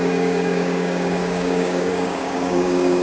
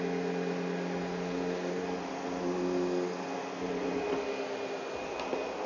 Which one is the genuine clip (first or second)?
second